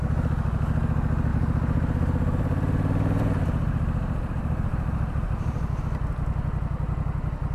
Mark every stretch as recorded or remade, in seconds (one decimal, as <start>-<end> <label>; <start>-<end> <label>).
0.0-1.3 recorded; 1.3-5.8 remade; 5.8-7.5 recorded